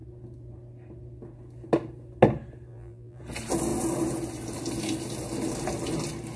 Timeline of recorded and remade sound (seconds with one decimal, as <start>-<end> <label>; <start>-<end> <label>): 0.0-2.7 recorded; 2.7-3.2 remade; 3.2-6.4 recorded